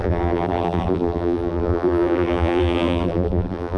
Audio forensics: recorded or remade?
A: remade